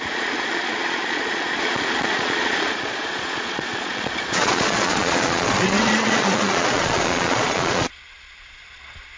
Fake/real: fake